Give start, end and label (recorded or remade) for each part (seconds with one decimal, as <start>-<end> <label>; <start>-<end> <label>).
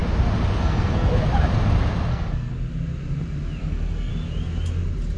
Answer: 0.0-0.6 recorded; 0.6-1.1 remade; 1.1-2.1 recorded; 2.1-2.5 remade; 2.5-3.6 recorded; 3.6-4.1 remade; 4.1-5.2 recorded